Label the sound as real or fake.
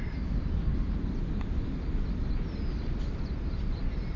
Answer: real